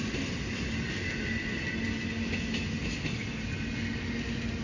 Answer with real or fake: real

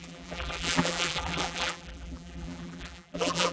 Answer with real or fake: fake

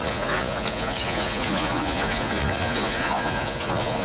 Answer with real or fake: fake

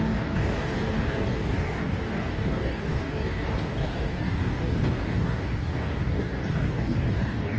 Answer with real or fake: fake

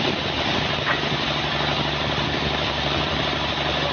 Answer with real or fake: real